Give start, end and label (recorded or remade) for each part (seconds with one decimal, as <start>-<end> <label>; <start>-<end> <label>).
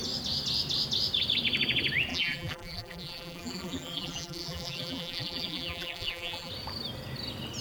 0.0-2.1 recorded; 2.1-6.5 remade; 6.5-7.6 recorded